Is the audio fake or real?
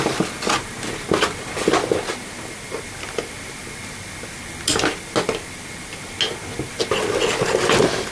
real